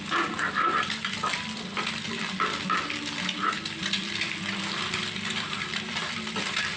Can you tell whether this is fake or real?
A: fake